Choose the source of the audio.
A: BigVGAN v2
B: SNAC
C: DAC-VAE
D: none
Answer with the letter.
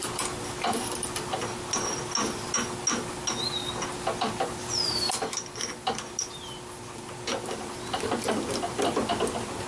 D